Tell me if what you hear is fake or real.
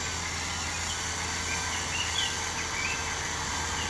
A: real